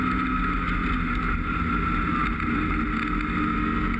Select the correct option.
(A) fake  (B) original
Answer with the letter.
B